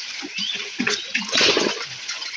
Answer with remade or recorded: remade